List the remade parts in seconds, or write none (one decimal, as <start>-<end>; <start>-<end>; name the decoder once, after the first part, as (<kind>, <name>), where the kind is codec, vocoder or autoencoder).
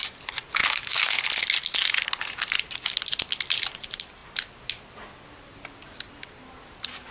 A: 0.6-1.2 (autoencoder, DAC-VAE)